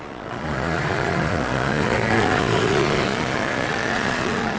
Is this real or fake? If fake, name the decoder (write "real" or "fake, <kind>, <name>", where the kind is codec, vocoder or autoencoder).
fake, vocoder, Vocos